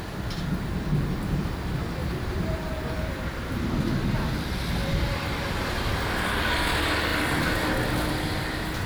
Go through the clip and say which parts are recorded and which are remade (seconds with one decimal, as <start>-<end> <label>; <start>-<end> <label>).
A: 0.0-2.0 recorded; 2.0-3.7 remade; 3.7-4.8 recorded; 4.8-5.5 remade; 5.5-8.9 recorded